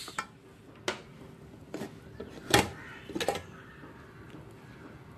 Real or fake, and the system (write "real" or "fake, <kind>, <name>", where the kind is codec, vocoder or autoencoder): real